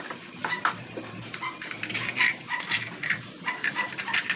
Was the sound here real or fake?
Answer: real